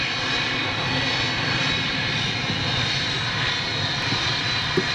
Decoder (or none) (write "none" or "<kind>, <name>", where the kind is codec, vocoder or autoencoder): none